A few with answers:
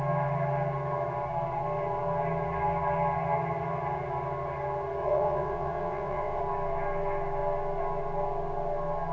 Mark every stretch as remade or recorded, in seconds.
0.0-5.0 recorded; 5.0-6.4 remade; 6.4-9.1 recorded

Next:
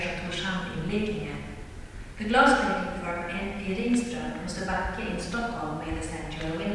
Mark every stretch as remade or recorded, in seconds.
0.0-6.7 recorded

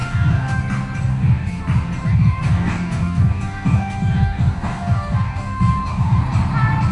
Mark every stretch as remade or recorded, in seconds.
0.0-0.6 remade; 0.6-1.1 recorded; 1.1-1.6 remade; 1.6-2.1 recorded; 2.1-6.2 remade; 6.2-6.9 recorded

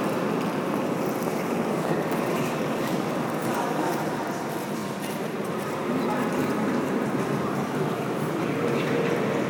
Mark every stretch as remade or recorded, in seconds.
0.0-1.3 recorded; 1.3-4.2 remade; 4.2-9.5 recorded

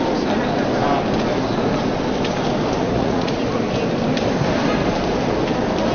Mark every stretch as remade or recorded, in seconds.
0.0-2.8 recorded; 2.8-3.4 remade; 3.4-5.9 recorded

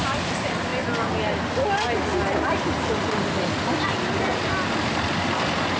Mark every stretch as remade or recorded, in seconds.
0.0-0.7 remade; 0.7-4.2 recorded; 4.2-5.8 remade

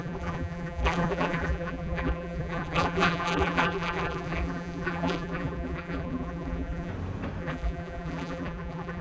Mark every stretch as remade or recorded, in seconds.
0.0-6.9 remade; 6.9-7.4 recorded; 7.4-9.0 remade